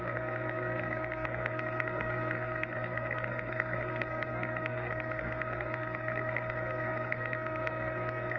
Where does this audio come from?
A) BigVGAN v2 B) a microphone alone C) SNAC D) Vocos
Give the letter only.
C